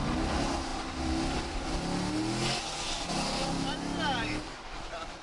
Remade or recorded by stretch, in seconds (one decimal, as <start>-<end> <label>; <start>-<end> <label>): 0.0-5.2 recorded